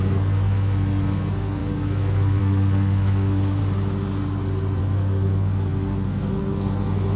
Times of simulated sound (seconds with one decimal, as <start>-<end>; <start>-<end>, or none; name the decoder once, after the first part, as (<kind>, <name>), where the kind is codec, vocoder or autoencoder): 0.0-3.6 (codec, SNAC); 4.8-7.2

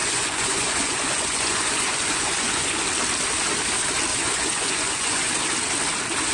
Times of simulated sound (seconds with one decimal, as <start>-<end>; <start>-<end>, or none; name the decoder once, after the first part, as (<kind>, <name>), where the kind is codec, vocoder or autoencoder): 0.0-2.8 (vocoder, Vocos); 4.1-5.3

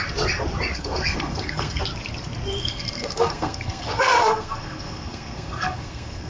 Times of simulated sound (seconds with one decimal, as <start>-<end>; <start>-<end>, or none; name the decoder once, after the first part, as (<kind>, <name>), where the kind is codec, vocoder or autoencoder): 0.7-1.8 (codec, SNAC); 2.6-6.3

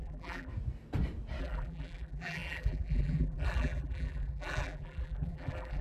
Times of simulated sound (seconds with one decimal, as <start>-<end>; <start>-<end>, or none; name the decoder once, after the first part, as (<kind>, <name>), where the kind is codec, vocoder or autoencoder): 0.0-0.5 (vocoder, BigVGAN v2); 1.4-5.8

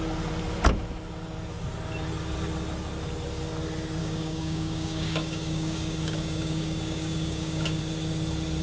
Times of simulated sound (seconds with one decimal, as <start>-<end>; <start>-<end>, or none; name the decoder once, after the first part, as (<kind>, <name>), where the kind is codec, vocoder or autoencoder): 4.0-7.8 (codec, DAC)